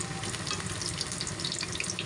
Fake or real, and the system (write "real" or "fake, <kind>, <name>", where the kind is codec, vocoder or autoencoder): real